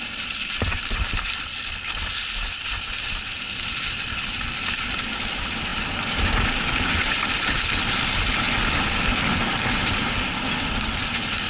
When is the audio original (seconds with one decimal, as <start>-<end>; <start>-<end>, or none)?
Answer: 0.0-11.5